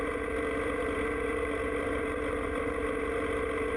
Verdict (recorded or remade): remade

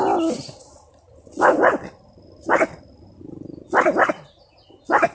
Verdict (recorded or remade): recorded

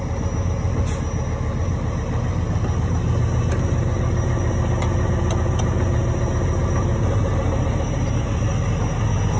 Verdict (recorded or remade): recorded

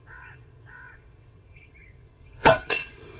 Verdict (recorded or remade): remade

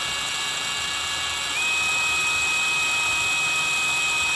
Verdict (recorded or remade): recorded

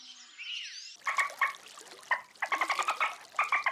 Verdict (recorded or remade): recorded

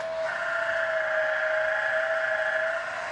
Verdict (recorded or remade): recorded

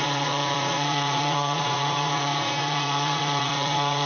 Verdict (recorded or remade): remade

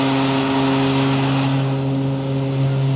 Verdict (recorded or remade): recorded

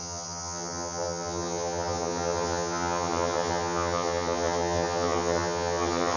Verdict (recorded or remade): remade